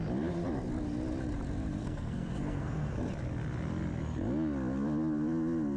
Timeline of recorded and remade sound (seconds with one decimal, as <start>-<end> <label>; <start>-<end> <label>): 0.0-1.8 recorded; 1.8-3.1 remade; 3.1-5.8 recorded

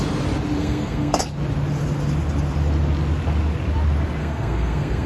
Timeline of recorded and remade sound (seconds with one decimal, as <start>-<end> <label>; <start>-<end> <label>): 0.0-0.6 recorded; 0.6-1.2 remade; 1.2-4.2 recorded; 4.2-5.1 remade

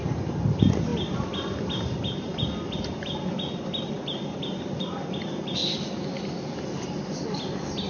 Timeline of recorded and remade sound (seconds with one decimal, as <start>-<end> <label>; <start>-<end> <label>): 0.0-7.9 recorded

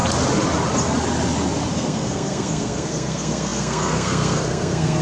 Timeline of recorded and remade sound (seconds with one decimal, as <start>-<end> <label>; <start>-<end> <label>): 0.0-1.7 recorded; 1.7-5.0 remade